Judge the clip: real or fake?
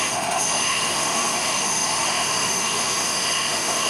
fake